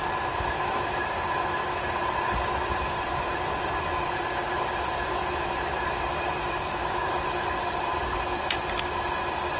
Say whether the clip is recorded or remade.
remade